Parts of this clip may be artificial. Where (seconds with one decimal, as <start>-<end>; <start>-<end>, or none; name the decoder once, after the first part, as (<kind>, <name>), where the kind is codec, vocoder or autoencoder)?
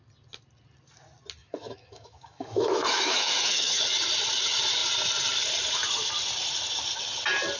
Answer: 1.4-3.8 (autoencoder, DAC-VAE)